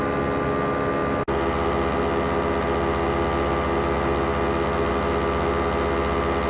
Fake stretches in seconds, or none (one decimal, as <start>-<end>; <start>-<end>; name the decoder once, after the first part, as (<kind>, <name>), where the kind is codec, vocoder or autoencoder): none

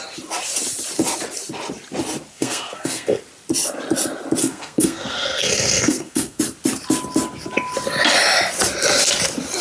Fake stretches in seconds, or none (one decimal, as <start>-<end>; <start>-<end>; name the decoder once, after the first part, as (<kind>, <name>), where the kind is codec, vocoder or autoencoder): 2.3-3.2 (codec, SNAC); 4.4-6.4

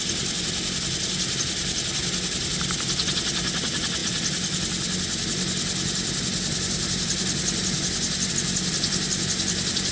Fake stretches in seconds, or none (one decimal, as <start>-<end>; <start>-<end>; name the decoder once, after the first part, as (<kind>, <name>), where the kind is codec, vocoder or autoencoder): none

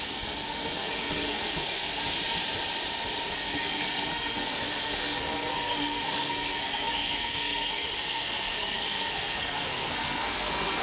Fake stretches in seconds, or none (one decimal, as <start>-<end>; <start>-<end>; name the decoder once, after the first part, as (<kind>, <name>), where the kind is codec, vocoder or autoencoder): 0.0-2.0 (codec, SNAC); 3.3-10.8

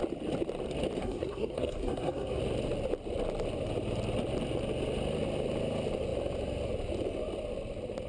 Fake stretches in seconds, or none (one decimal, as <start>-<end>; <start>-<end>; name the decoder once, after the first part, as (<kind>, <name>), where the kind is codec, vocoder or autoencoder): 1.0-2.4 (codec, SNAC)

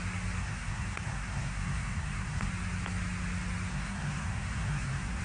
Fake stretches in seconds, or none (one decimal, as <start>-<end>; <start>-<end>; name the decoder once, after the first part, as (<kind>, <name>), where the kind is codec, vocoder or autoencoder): 0.4-2.5 (codec, SNAC); 3.7-5.2